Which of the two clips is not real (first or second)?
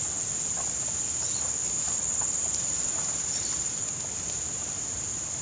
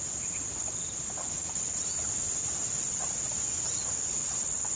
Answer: first